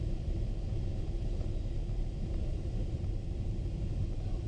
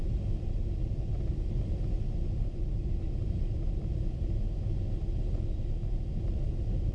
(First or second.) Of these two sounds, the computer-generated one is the first